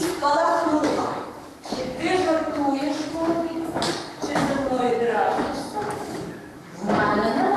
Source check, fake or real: fake